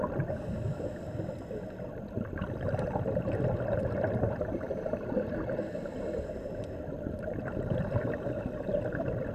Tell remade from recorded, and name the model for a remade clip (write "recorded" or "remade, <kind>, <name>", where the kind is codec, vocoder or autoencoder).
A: remade, vocoder, BigVGAN v2